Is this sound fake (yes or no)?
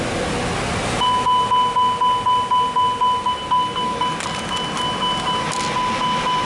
no